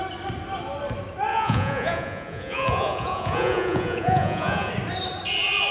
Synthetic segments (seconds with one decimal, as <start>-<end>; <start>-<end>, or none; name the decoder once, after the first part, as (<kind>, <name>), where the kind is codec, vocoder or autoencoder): 1.3-4.7 (vocoder, Vocos)